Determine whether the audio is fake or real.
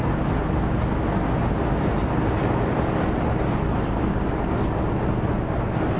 real